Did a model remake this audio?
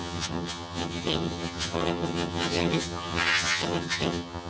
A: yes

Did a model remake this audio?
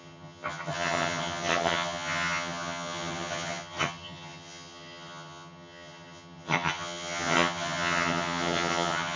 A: yes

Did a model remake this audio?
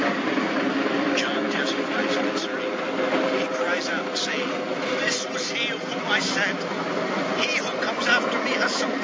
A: no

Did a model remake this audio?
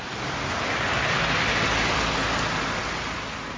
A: no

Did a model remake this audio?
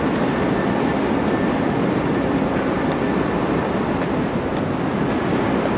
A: no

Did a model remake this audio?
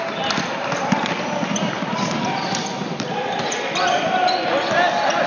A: no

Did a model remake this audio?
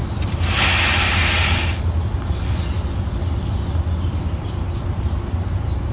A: no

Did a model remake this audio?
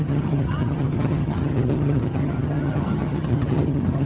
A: yes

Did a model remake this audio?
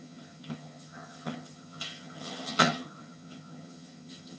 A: yes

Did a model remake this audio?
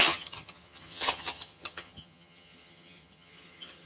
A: yes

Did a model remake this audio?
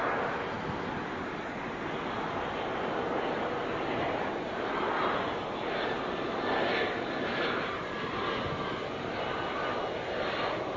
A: no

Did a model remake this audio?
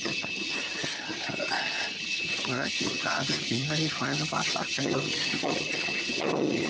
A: yes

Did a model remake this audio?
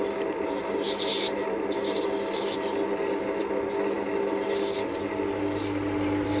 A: no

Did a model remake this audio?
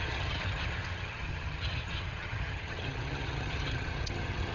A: yes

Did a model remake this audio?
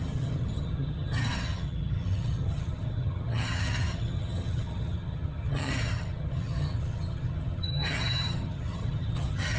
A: yes